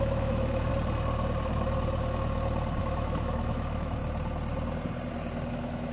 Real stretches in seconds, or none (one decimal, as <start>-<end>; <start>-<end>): 0.7-2.8; 4.0-5.5

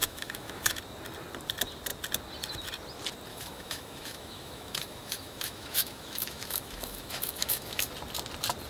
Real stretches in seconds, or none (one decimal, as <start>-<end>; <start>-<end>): 0.8-3.3; 7.9-8.7